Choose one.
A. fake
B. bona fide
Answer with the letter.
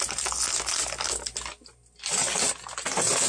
B